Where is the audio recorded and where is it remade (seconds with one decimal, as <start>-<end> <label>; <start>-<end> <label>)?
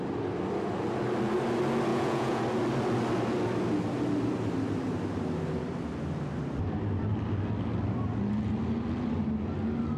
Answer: 0.0-1.9 recorded; 1.9-2.4 remade; 2.4-10.0 recorded